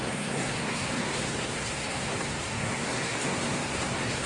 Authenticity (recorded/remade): remade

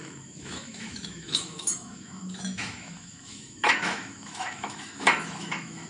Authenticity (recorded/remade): remade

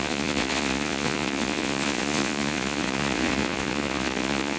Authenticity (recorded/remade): remade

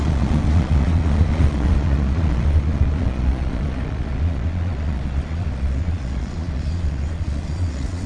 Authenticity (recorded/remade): remade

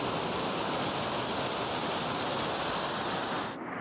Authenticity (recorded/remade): recorded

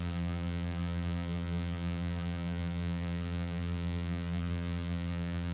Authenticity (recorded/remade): remade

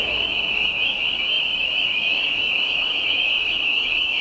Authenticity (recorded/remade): remade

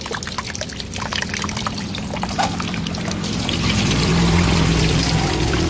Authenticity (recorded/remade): recorded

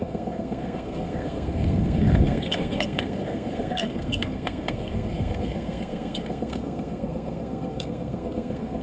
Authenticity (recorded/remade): remade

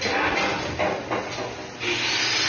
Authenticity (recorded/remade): recorded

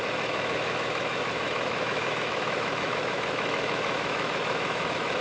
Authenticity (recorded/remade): remade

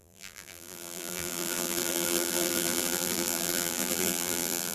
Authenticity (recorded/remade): remade